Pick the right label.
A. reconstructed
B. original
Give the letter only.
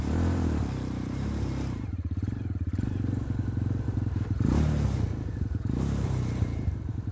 A